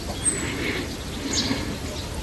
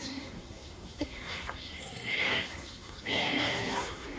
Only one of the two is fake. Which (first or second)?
second